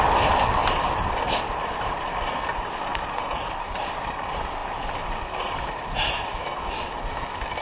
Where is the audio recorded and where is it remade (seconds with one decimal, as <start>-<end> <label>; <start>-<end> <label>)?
0.0-0.6 recorded; 0.6-2.0 remade; 2.0-2.9 recorded; 2.9-4.0 remade; 4.0-7.6 recorded